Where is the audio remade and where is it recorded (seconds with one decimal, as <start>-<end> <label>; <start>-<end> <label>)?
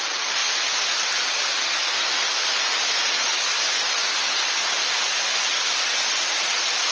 0.0-6.9 recorded